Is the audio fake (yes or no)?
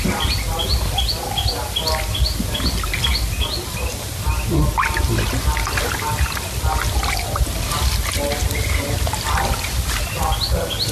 no